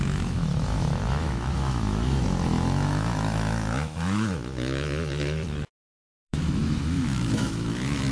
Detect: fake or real fake